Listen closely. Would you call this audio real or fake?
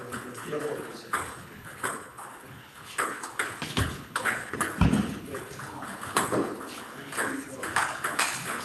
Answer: fake